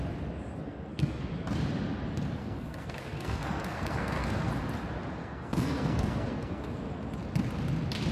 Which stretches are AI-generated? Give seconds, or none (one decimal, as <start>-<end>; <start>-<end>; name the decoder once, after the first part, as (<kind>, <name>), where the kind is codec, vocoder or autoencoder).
0.5-1.3 (codec, SNAC); 2.4-4.5; 5.2-6.8